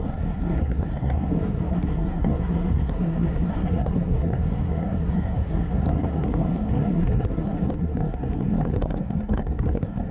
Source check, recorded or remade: remade